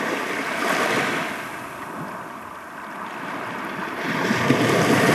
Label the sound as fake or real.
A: real